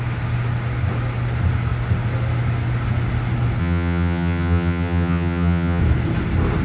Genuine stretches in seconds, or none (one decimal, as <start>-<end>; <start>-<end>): 0.0-3.6; 5.8-6.6